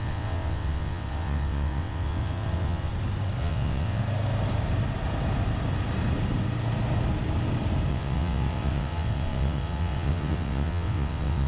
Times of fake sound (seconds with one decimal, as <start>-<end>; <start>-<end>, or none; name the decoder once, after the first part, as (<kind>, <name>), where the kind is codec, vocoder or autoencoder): 0.0-2.9 (vocoder, WaveNeXt); 3.4-4.0; 7.9-11.5